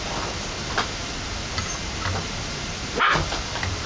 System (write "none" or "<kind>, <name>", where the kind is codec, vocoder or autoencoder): none